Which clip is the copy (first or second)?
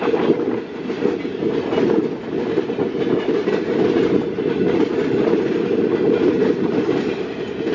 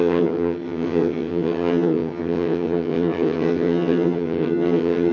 second